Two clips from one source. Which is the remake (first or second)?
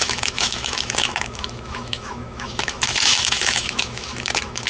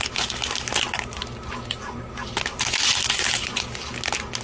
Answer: first